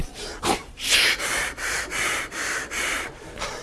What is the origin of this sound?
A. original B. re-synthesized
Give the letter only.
B